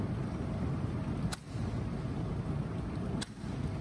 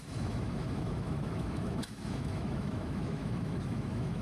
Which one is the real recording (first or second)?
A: first